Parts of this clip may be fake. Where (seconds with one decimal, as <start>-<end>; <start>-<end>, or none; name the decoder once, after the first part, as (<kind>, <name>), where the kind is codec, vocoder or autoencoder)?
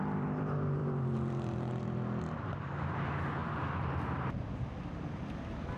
0.0-5.8 (vocoder, BigVGAN v2)